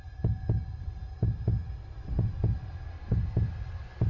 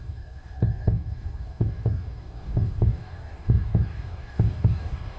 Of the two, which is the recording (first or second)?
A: first